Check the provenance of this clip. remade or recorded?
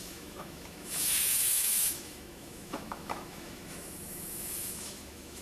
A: remade